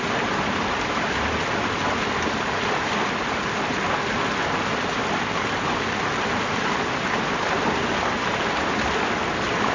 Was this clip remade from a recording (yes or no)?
no